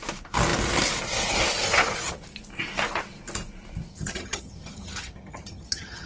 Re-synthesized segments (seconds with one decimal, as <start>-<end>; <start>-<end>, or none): 3.9-6.1